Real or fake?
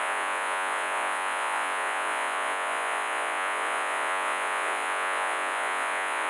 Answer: fake